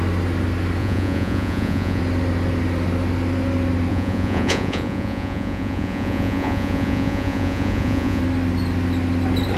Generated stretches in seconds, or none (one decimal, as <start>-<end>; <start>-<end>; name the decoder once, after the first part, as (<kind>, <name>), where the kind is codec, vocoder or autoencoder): 0.8-2.0 (vocoder, Vocos); 3.9-8.2